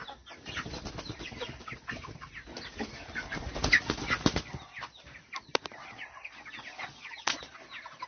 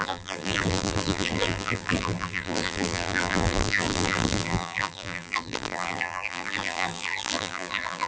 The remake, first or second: second